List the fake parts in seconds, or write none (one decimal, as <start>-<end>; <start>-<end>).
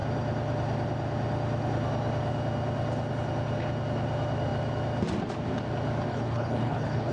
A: 6.1-7.1